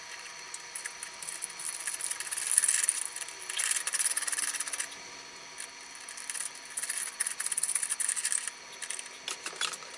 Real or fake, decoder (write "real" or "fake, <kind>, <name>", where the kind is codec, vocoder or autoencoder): real